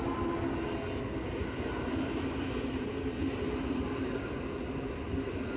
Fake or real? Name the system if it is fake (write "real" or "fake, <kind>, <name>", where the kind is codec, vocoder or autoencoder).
real